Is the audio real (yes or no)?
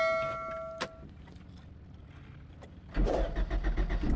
yes